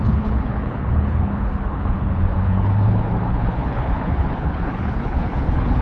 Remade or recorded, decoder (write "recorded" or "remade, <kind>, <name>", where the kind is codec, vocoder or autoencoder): remade, codec, HILCodec